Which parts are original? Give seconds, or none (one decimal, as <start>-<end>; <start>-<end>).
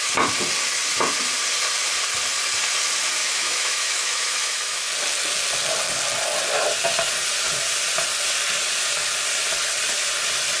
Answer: 0.0-3.2; 4.9-10.6